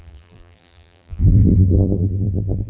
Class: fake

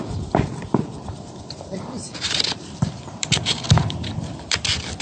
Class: fake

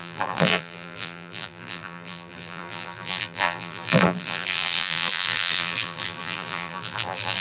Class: fake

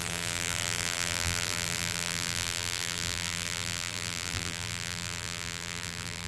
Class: fake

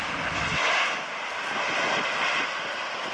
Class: real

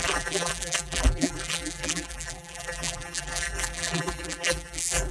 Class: fake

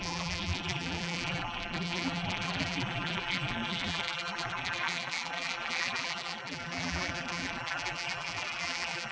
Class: fake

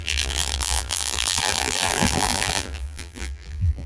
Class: fake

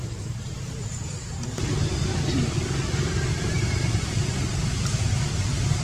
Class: fake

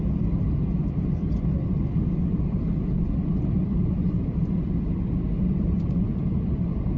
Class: fake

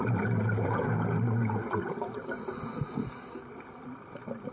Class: fake